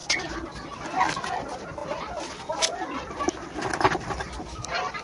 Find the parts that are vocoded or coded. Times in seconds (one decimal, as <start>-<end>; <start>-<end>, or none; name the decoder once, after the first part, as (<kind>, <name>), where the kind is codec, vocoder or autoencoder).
none